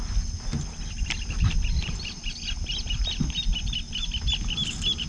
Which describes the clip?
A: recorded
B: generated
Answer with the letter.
A